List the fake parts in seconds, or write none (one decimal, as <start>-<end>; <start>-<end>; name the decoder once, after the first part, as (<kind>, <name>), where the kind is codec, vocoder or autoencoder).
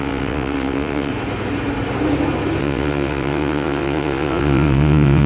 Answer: 0.0-1.1 (vocoder, WaveNeXt); 2.6-5.3